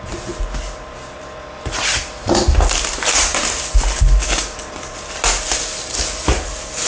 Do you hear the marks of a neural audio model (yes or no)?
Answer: no